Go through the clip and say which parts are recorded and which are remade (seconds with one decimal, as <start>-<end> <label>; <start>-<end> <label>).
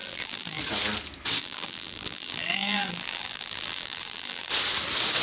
0.0-0.6 remade; 0.6-1.4 recorded; 1.4-4.5 remade; 4.5-5.2 recorded